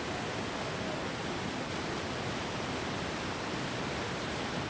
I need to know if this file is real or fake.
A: real